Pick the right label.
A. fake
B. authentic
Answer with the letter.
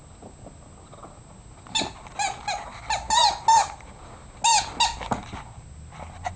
B